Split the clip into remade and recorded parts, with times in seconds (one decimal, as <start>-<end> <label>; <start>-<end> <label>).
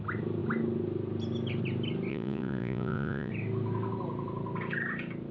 0.0-2.1 recorded; 2.1-3.3 remade; 3.3-5.3 recorded